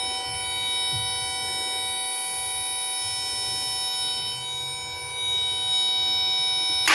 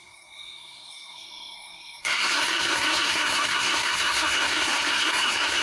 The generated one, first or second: second